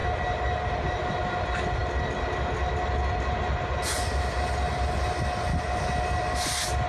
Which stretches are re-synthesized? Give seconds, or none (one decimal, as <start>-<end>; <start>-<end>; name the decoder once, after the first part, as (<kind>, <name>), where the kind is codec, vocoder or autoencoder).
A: none